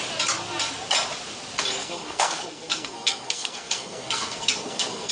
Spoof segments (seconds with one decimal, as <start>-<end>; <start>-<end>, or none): 1.8-5.1